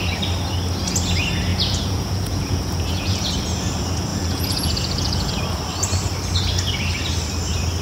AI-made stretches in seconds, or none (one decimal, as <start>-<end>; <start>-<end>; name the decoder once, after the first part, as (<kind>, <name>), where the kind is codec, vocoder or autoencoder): 1.5-3.3 (vocoder, Vocos); 4.1-5.3

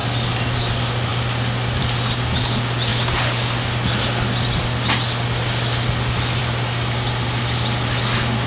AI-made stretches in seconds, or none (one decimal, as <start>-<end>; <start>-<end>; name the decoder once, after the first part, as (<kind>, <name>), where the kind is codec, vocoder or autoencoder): none

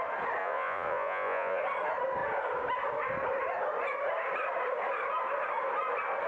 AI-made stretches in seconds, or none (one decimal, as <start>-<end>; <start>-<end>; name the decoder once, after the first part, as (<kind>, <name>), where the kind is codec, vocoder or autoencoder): 0.4-1.6 (vocoder, Vocos)

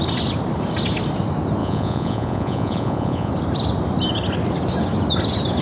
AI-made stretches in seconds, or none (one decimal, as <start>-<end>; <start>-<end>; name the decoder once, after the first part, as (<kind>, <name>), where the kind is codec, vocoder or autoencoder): 1.6-3.3 (vocoder, Vocos)

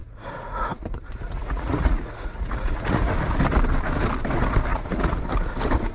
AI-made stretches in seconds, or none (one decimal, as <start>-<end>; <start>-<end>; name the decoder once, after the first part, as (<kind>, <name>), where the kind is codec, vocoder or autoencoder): 0.0-3.1 (vocoder, Vocos); 4.7-5.2